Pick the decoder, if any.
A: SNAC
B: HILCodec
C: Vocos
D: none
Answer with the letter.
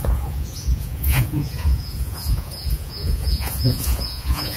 C